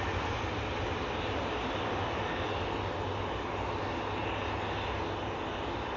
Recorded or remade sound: recorded